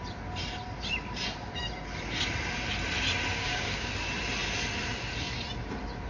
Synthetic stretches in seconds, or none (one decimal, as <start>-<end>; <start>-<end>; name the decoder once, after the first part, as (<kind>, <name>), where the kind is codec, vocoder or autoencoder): 3.3-3.9 (codec, DAC)